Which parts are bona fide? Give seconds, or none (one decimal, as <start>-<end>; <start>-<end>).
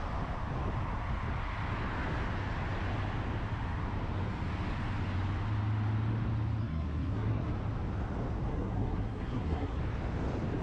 0.0-6.6; 7.5-8.5; 9.8-10.6